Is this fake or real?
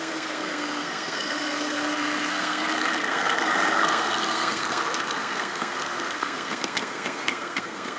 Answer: fake